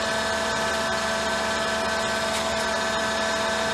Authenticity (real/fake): real